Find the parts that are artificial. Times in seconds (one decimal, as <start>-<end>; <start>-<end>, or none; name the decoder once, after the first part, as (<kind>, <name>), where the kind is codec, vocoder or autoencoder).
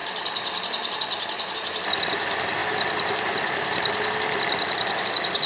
none